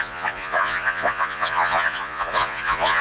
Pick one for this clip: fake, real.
fake